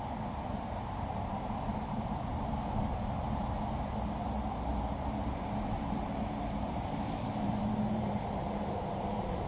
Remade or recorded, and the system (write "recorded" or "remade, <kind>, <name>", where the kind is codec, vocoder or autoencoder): remade, vocoder, BigVGAN v2